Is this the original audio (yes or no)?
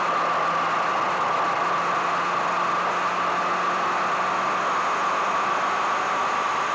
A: yes